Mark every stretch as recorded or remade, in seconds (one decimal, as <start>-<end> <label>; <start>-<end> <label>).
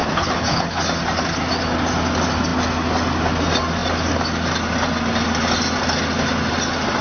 0.0-0.8 remade; 0.8-7.0 recorded